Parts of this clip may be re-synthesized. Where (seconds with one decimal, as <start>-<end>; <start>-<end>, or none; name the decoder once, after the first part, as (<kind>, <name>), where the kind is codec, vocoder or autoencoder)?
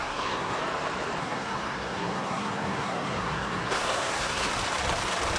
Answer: 0.0-0.6 (codec, SNAC); 1.2-4.5